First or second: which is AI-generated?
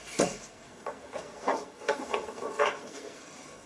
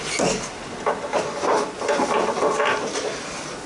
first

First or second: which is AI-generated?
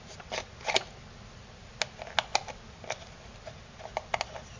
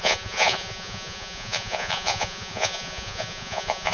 second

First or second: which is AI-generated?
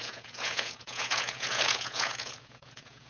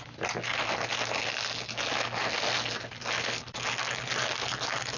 first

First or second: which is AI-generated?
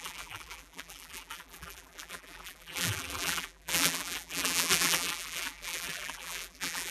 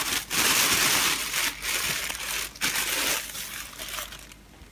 first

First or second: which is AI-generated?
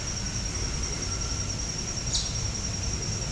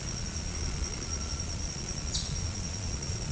second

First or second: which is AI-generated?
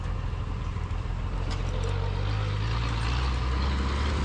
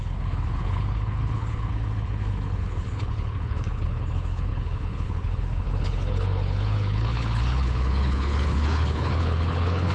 second